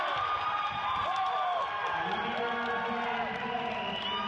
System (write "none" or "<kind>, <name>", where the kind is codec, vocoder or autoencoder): none